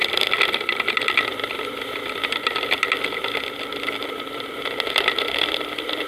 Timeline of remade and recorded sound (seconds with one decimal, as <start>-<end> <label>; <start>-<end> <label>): 0.0-0.9 remade; 0.9-6.1 recorded